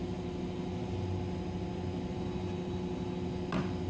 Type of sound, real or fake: real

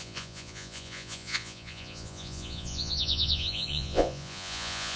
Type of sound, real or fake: fake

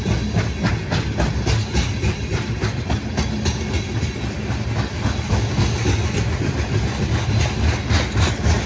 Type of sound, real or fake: real